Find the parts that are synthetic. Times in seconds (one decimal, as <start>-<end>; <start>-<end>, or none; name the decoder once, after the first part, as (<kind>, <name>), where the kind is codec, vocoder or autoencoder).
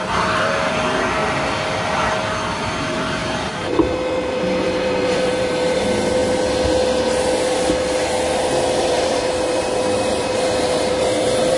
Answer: 0.0-1.2 (vocoder, BigVGAN v2); 2.5-6.2; 8.8-11.6